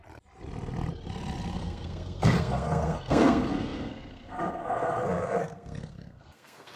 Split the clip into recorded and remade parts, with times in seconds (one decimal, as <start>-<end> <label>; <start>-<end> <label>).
0.0-1.5 recorded; 1.5-6.8 remade